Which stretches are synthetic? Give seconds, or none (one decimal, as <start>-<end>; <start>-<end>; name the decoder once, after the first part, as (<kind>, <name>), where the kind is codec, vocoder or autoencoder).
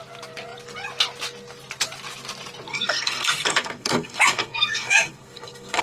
2.7-5.8 (codec, SNAC)